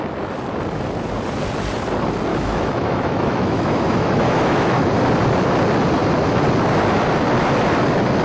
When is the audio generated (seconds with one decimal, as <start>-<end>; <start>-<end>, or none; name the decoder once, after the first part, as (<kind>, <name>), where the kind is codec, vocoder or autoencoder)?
2.3-4.9 (autoencoder, DAC-VAE)

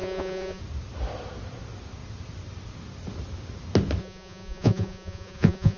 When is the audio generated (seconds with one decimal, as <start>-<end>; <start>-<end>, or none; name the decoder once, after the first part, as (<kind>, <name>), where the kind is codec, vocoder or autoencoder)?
0.0-0.6 (vocoder, Vocos); 4.0-5.8

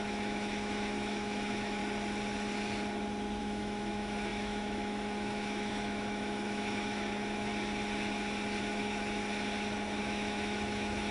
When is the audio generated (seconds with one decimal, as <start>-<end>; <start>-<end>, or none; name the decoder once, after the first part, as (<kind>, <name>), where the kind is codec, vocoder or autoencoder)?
0.0-1.8 (autoencoder, DAC-VAE); 3.4-7.5; 8.6-9.2; 10.0-11.1

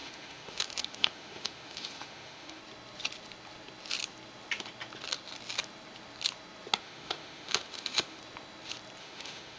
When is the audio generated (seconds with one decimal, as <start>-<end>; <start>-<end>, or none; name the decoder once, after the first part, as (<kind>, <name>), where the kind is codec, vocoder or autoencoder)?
0.0-2.6 (autoencoder, DAC-VAE); 6.8-8.2; 9.0-9.6

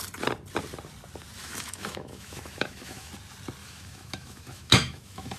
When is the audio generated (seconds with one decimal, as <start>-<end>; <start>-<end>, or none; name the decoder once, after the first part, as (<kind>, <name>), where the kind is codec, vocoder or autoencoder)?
1.4-3.1 (autoencoder, DAC-VAE); 3.6-5.4